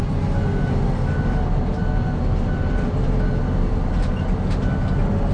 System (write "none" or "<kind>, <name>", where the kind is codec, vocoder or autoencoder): none